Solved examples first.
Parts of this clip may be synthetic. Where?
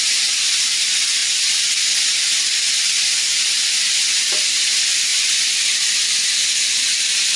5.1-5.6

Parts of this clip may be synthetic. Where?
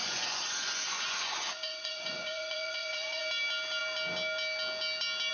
0.0-3.2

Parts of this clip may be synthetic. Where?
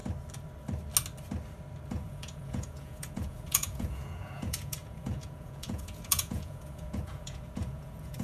1.9-8.2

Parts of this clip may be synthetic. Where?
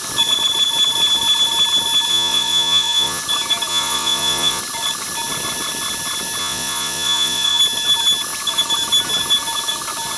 2.1-3.2; 3.7-4.6; 6.4-7.6